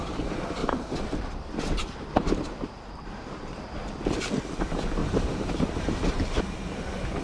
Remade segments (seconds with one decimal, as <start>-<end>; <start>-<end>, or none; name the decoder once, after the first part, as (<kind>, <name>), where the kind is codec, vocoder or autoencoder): 0.6-3.9 (vocoder, BigVGAN v2); 5.0-6.4